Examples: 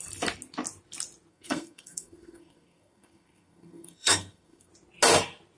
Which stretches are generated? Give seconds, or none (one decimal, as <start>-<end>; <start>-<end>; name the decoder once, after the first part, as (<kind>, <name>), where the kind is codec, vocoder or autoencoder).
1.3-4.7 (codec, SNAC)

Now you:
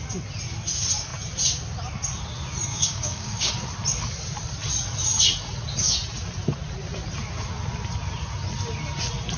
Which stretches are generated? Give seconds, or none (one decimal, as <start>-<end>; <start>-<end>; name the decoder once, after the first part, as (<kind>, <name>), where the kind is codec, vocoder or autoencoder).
2.7-3.5 (codec, DAC)

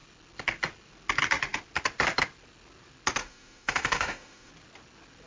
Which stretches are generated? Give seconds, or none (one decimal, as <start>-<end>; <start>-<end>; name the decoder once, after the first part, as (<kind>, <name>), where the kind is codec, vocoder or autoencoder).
3.2-4.5 (autoencoder, DAC-VAE)

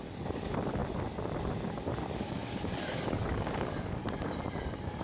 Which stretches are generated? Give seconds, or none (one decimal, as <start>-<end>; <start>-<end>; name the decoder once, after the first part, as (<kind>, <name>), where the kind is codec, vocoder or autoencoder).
0.0-0.8 (codec, DAC); 1.9-4.0

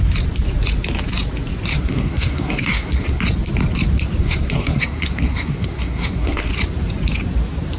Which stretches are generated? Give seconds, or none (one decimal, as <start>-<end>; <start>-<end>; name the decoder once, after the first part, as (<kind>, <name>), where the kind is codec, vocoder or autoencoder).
1.7-3.2 (codec, SNAC); 4.2-6.5

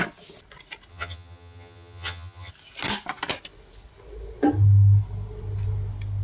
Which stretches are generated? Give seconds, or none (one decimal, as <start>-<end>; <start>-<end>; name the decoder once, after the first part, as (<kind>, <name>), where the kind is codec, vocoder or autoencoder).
0.9-2.5 (vocoder, HiFi-GAN)

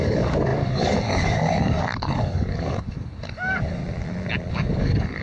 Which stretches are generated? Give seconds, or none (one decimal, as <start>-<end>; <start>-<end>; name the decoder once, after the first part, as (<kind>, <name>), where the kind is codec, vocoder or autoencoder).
0.0-3.8 (codec, DAC); 4.5-5.2

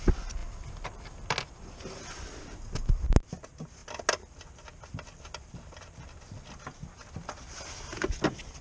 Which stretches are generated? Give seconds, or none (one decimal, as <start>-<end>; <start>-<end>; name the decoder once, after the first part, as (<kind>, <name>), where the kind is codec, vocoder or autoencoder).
none